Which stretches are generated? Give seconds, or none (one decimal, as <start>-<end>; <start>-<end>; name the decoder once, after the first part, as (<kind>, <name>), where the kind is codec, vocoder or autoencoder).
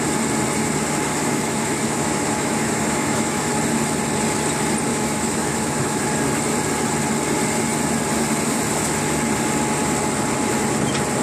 1.1-3.5 (autoencoder, DAC-VAE); 4.9-6.0